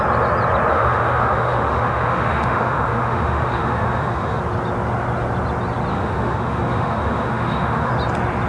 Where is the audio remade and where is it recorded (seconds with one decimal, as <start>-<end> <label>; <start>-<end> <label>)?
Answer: 0.0-0.7 recorded; 0.7-4.4 remade; 4.4-5.9 recorded; 5.9-7.9 remade; 7.9-8.5 recorded